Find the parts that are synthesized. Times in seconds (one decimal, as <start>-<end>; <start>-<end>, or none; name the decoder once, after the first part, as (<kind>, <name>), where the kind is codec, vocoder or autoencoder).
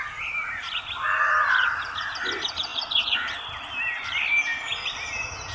1.3-2.1 (vocoder, BigVGAN v2); 2.7-3.4